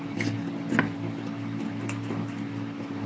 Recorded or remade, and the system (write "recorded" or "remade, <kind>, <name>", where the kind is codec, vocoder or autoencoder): recorded